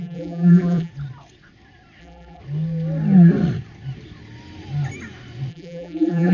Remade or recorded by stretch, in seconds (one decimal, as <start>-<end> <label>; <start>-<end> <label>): 0.0-0.9 remade; 0.9-2.0 recorded; 2.0-2.4 remade; 2.4-5.5 recorded; 5.5-6.3 remade